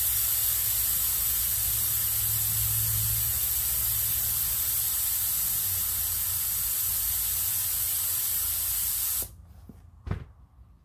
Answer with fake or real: real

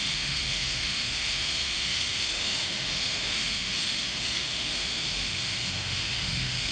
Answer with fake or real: fake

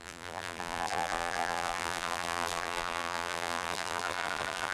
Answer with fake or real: fake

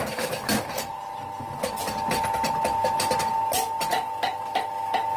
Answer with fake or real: real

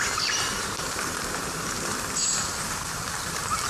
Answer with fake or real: fake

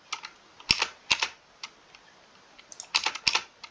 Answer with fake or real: real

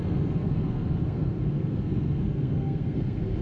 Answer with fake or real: fake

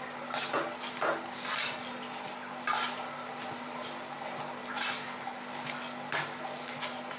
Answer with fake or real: real